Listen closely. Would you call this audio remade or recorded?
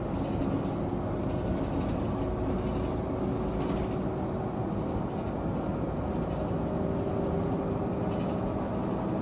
recorded